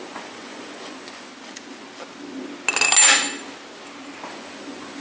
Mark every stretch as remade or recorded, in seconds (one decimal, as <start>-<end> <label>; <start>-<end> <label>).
0.0-1.3 remade; 1.3-4.3 recorded; 4.3-5.0 remade